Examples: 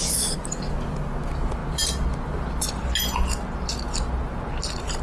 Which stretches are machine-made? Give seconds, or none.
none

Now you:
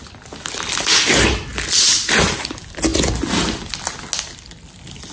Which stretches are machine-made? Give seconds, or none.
none

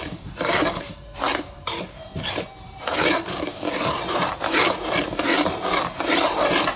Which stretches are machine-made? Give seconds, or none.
0.0-5.3 (vocoder, BigVGAN v2); 6.0-6.8